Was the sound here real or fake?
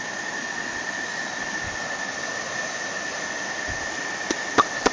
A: real